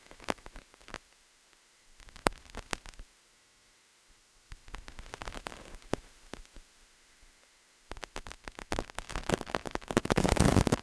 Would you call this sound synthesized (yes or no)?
yes